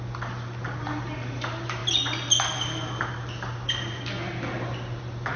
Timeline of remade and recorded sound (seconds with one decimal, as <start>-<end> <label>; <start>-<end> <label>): 0.0-5.4 recorded